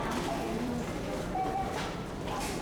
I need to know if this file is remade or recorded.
remade